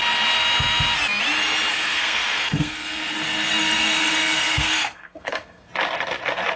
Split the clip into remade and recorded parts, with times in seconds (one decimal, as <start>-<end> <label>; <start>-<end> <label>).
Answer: 0.0-1.7 recorded; 1.7-5.7 remade; 5.7-6.6 recorded